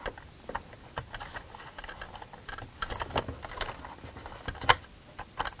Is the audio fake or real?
real